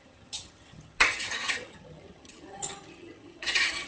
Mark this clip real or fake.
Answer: fake